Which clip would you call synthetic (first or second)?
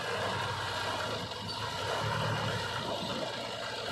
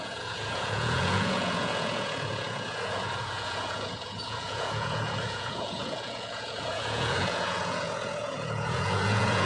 second